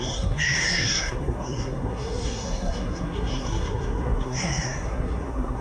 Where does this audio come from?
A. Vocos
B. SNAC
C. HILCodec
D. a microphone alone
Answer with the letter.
B